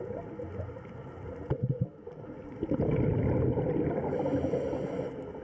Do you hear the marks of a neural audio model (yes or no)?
no